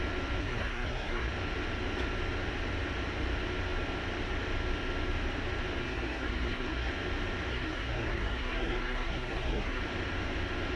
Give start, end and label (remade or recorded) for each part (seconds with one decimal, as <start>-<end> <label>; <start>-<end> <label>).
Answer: 0.0-0.4 recorded; 0.4-1.3 remade; 1.3-5.8 recorded; 5.8-6.9 remade; 6.9-7.5 recorded; 7.5-9.8 remade; 9.8-10.8 recorded